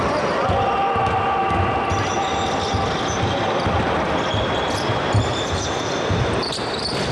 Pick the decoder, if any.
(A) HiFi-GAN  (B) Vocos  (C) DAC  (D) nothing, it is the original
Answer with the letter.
D